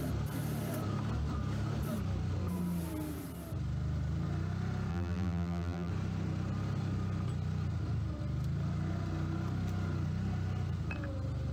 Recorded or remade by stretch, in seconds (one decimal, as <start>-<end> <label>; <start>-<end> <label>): 0.0-4.9 recorded; 4.9-5.9 remade; 5.9-11.5 recorded